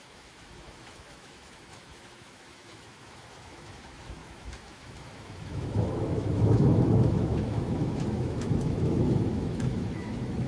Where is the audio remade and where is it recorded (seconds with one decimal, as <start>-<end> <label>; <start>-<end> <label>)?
0.0-10.5 remade